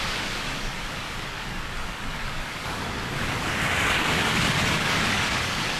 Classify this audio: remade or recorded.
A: remade